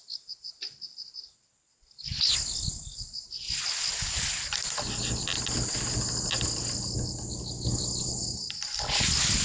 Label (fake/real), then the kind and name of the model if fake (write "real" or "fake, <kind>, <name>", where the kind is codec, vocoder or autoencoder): real